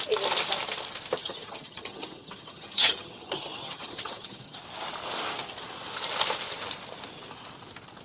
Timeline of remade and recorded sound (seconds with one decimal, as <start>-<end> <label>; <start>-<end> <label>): 0.0-1.2 recorded; 1.2-4.6 remade; 4.6-8.0 recorded